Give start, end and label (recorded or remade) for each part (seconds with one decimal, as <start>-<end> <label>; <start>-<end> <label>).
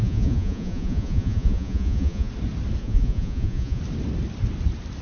0.0-2.3 remade; 2.3-2.8 recorded; 2.8-3.8 remade; 3.8-5.0 recorded